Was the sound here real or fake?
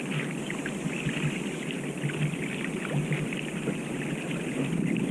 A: real